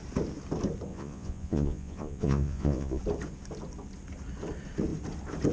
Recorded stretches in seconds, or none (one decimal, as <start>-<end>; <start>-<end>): 0.0-0.9; 3.0-5.5